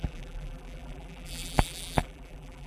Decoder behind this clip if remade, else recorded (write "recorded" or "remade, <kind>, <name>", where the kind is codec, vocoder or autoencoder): remade, vocoder, BigVGAN v2